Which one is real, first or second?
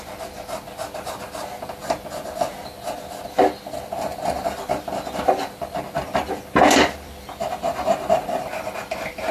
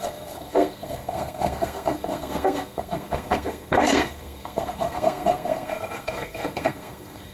first